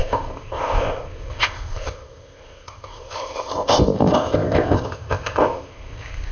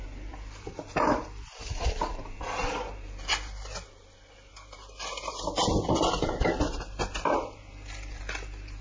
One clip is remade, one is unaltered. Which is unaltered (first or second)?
second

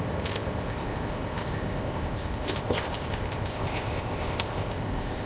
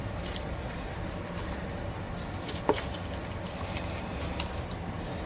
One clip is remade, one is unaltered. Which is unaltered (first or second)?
second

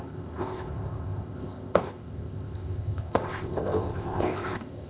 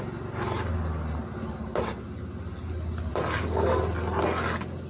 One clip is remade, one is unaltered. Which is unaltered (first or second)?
second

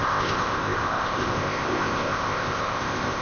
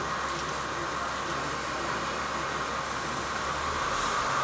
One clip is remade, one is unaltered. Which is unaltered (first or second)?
second